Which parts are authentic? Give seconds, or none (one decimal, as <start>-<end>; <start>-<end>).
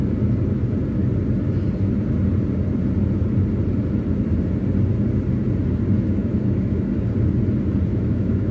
0.0-6.2; 6.9-7.9